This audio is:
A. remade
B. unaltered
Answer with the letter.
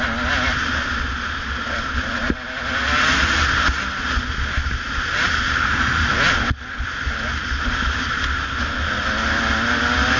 B